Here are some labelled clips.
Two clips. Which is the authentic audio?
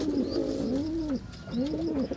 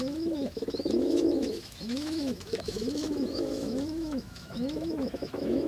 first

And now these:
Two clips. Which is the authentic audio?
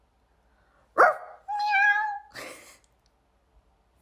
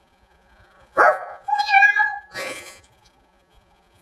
first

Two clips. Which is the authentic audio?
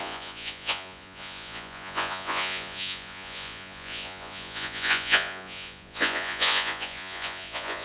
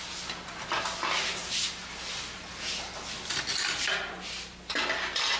second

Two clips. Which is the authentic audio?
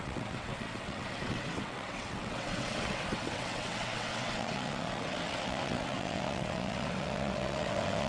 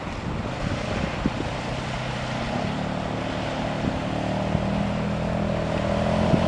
second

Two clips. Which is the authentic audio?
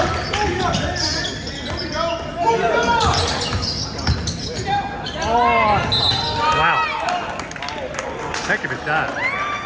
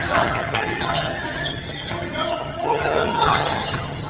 first